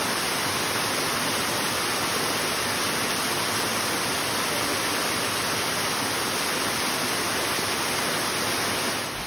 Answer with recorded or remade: recorded